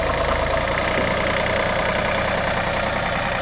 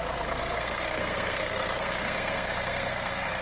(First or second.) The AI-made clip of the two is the second